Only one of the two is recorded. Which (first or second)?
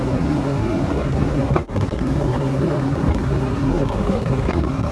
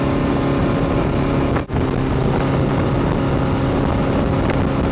second